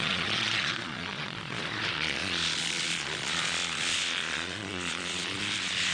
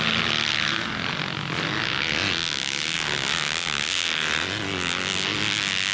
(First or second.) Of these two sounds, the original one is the second